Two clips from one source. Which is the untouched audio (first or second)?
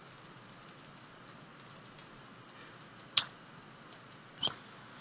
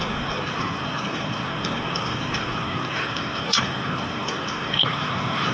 first